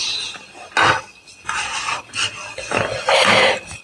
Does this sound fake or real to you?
real